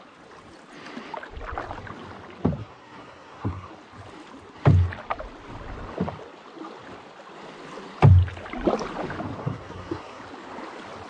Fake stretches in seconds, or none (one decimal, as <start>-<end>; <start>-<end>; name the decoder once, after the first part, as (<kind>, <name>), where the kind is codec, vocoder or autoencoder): 2.6-3.7 (codec, SNAC); 9.4-10.2

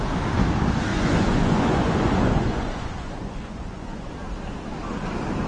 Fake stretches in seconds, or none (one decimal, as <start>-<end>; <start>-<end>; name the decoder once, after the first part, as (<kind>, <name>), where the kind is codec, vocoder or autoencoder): 0.9-4.1 (vocoder, Vocos)

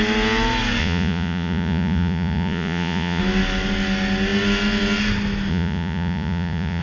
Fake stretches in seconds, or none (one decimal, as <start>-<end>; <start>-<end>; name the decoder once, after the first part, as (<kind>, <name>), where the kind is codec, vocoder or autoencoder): 0.8-3.2 (vocoder, Vocos); 5.5-6.8

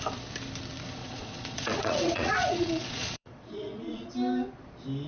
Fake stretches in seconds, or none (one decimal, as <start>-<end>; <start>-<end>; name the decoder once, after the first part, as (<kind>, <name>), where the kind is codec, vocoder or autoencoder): 1.0-4.1 (vocoder, Vocos)

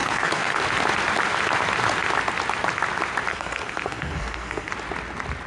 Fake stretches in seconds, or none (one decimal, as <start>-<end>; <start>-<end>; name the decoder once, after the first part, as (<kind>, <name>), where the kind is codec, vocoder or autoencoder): 0.0-0.6 (codec, SNAC); 3.3-4.7

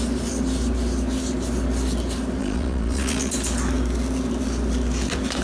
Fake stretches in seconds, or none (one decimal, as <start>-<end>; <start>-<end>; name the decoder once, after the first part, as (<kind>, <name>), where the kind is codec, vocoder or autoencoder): 2.4-3.3 (vocoder, Vocos)

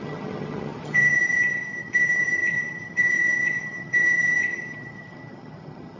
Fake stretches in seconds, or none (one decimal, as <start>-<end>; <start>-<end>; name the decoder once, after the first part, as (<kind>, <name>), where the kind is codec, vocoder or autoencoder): 0.0-6.0 (vocoder, HiFi-GAN)

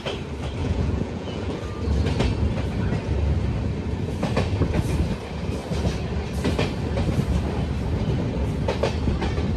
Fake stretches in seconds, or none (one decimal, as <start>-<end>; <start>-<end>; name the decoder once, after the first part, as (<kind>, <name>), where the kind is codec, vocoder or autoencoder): 0.6-1.6 (vocoder, Vocos)